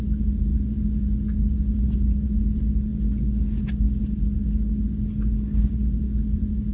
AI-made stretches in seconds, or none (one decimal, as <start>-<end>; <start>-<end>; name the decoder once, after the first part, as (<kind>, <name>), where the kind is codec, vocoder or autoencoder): none